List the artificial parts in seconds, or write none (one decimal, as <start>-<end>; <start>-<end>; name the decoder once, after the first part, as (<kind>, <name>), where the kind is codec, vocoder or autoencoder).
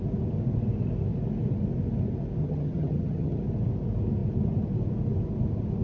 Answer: 2.4-3.4 (vocoder, HiFi-GAN)